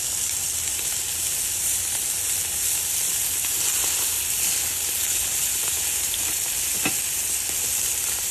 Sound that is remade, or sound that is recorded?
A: recorded